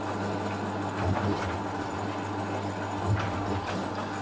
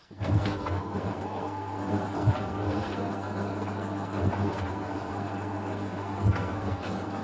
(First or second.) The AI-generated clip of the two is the second